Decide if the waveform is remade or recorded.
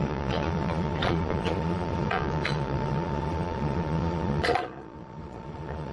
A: remade